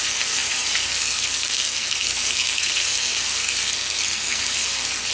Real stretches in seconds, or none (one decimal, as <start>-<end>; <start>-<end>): none